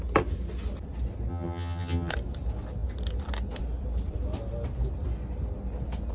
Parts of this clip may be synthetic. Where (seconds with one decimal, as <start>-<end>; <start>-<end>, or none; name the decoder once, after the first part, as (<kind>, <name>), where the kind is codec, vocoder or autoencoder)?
1.3-2.1 (vocoder, HiFi-GAN)